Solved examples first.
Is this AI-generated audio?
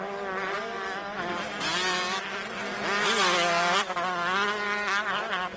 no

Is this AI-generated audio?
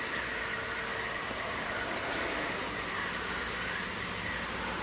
no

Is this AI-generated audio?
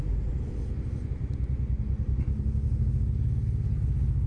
no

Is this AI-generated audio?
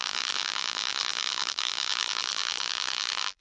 yes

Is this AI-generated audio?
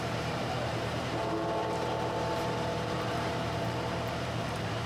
yes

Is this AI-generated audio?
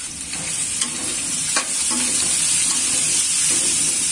yes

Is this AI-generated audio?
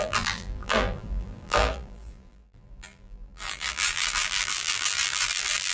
yes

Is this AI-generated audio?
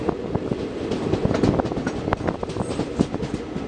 no